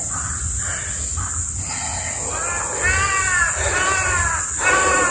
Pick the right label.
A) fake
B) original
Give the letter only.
B